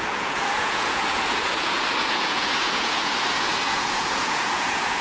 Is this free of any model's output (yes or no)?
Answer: no